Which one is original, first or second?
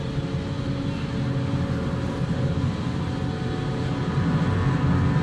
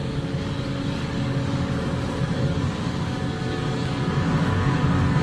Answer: first